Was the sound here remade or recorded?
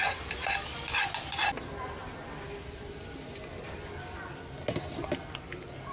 recorded